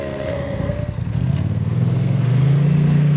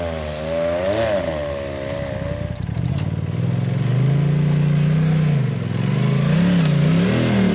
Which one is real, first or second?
second